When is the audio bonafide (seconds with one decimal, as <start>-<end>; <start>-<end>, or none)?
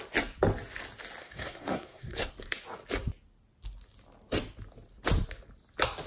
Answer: 0.0-1.2; 2.3-6.1